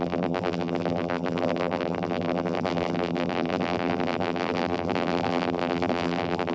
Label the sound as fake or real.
fake